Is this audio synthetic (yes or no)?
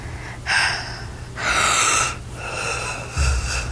no